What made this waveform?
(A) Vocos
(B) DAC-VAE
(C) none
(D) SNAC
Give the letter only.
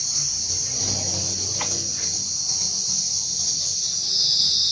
C